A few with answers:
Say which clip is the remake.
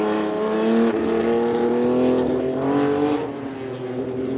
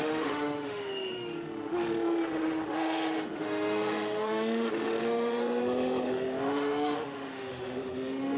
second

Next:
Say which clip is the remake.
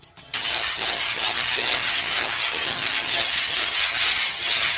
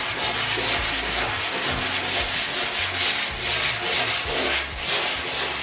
first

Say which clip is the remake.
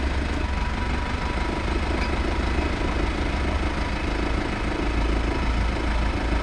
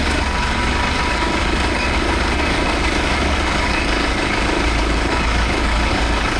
second